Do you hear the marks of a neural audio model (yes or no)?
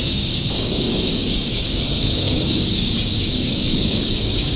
yes